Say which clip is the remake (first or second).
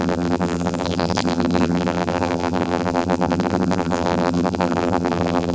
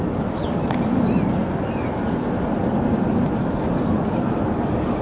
first